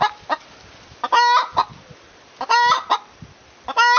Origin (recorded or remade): recorded